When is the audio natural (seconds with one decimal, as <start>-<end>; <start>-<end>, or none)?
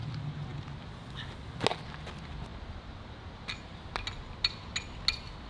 0.0-5.5